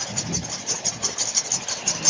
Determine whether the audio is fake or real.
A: real